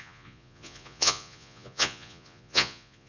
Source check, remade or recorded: remade